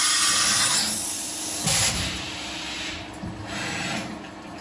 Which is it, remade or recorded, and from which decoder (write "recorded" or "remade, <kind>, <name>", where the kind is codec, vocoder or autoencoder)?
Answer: recorded